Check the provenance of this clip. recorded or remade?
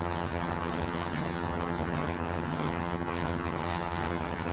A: remade